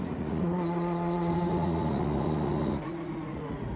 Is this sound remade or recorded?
remade